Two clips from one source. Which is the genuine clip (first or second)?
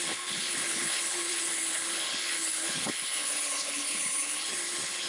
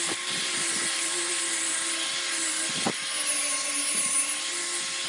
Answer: second